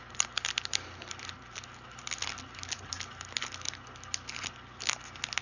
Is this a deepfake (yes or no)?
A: no